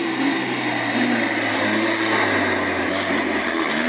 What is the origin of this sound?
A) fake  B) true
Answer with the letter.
B